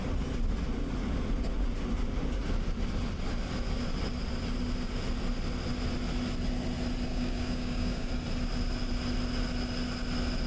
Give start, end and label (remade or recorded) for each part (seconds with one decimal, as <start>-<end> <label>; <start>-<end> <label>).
0.0-7.1 recorded; 7.1-8.1 remade; 8.1-10.5 recorded

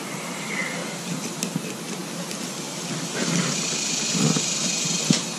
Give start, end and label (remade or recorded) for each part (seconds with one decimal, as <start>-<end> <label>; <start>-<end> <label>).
0.0-0.8 remade; 0.8-1.5 recorded; 1.5-2.0 remade; 2.0-5.4 recorded

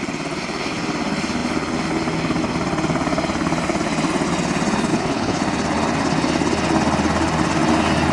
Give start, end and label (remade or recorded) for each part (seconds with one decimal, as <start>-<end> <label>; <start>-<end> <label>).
0.0-4.9 recorded; 4.9-5.4 remade; 5.4-8.1 recorded

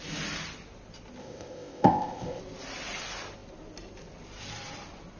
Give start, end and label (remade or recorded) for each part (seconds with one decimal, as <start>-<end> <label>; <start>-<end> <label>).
0.0-1.2 recorded; 1.2-2.4 remade; 2.4-5.2 recorded

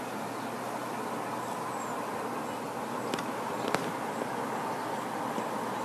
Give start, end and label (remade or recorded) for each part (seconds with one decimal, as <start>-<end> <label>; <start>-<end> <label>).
0.0-5.8 recorded

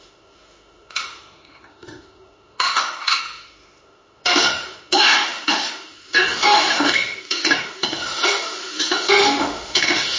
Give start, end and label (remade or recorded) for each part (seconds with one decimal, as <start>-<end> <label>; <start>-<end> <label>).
0.0-10.2 remade